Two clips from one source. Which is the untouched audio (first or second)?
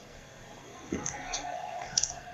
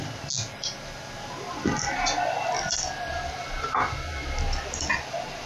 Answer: second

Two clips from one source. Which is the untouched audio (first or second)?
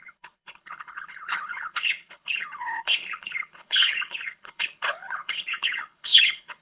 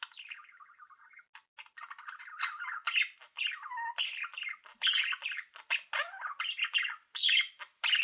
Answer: second